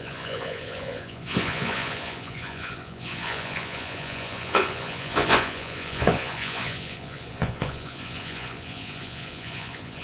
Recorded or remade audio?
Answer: remade